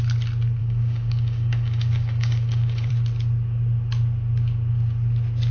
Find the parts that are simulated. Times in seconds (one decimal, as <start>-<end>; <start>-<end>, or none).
0.6-2.9